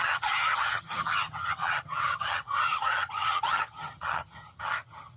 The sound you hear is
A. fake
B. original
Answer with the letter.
A